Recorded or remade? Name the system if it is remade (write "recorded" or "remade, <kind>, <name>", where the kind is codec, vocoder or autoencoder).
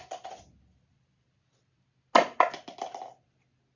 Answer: recorded